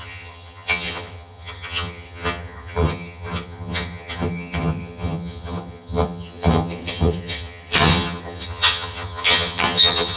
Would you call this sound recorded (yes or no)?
no